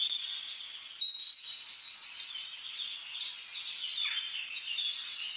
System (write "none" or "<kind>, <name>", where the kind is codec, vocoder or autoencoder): none